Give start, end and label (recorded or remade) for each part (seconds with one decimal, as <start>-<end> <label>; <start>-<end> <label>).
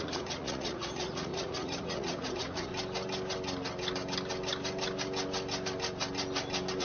0.0-2.7 remade; 2.7-6.8 recorded